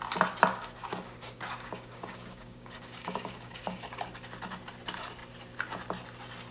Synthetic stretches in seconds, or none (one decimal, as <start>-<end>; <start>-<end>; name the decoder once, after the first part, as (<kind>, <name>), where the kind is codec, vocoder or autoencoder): 0.5-4.0 (codec, DAC)